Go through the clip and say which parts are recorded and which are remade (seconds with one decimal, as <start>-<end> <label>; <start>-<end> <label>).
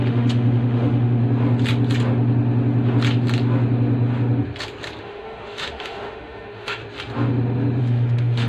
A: 0.0-1.2 remade; 1.2-5.0 recorded; 5.0-6.8 remade; 6.8-7.8 recorded; 7.8-8.5 remade